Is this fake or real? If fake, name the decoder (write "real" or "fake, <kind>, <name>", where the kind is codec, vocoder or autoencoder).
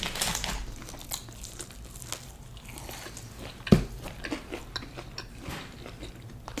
real